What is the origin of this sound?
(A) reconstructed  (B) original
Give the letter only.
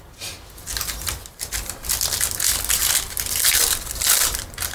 B